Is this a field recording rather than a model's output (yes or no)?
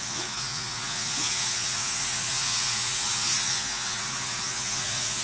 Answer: no